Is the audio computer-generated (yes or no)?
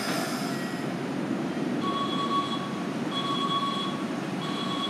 no